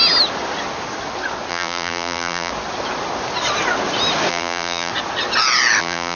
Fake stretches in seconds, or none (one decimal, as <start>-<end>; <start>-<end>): 1.5-2.5; 4.3-4.9; 5.8-6.2